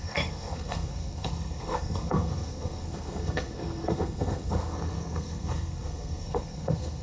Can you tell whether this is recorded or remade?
remade